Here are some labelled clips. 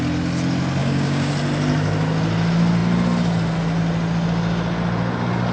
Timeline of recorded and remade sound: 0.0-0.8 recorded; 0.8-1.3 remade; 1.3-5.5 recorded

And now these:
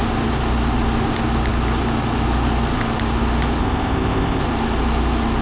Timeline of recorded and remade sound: 0.0-3.6 recorded; 3.6-4.4 remade; 4.4-5.4 recorded

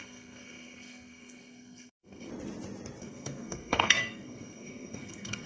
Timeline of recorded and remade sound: 0.0-2.3 remade; 2.3-3.0 recorded; 3.0-5.5 remade

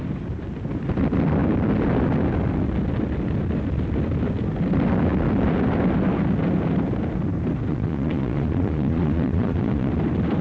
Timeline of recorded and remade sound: 0.0-7.7 recorded; 7.7-9.9 remade; 9.9-10.4 recorded

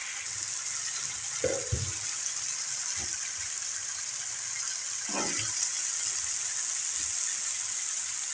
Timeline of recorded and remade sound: 0.0-8.3 recorded

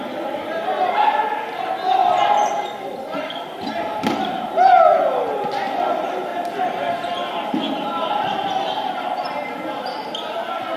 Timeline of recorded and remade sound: 0.0-10.8 recorded

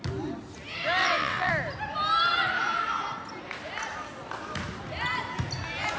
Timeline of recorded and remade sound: 0.0-1.0 recorded; 1.0-1.5 remade; 1.5-6.0 recorded

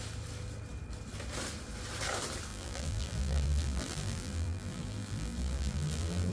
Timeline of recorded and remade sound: 0.0-2.5 recorded; 2.5-6.3 remade